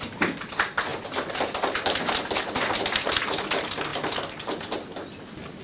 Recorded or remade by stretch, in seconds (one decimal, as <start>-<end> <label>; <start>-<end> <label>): 0.0-5.6 recorded